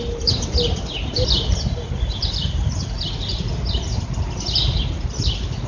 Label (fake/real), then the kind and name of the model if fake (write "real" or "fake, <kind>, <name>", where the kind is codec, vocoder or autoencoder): real